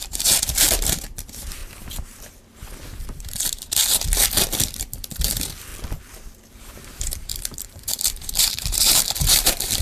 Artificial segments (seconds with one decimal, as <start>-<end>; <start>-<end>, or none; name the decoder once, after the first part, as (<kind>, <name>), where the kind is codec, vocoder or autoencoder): 0.0-1.6 (vocoder, BigVGAN v2); 3.0-3.8; 5.1-5.7; 6.5-9.8